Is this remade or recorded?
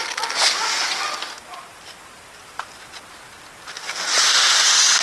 recorded